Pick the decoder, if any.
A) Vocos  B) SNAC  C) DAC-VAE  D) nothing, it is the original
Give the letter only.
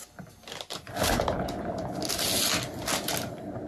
D